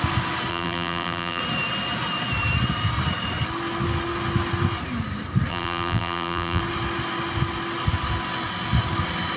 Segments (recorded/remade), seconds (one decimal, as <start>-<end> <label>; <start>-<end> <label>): 0.0-0.5 recorded; 0.5-1.4 remade; 1.4-5.5 recorded; 5.5-6.6 remade; 6.6-9.4 recorded